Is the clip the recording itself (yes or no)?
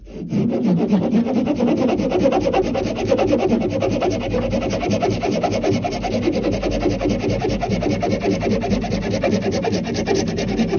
yes